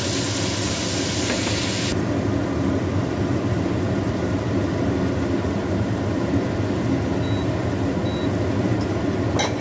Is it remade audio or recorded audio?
recorded